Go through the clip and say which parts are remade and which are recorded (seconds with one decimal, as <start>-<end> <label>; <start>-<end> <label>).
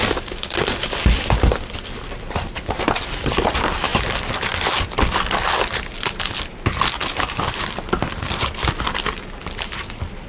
0.0-10.3 recorded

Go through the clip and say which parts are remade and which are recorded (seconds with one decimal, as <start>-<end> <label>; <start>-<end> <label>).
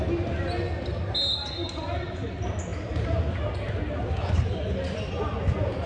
0.0-5.9 recorded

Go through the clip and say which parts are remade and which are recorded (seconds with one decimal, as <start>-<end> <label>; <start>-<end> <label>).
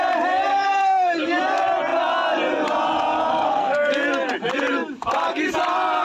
0.0-0.5 recorded; 0.5-1.4 remade; 1.4-3.3 recorded; 3.3-3.9 remade; 3.9-6.0 recorded